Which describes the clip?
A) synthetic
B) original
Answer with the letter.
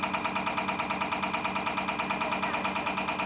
B